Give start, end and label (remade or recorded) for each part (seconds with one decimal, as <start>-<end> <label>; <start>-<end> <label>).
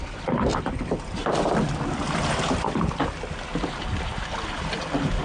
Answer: 0.0-3.0 remade; 3.0-3.5 recorded; 3.5-4.1 remade; 4.1-5.2 recorded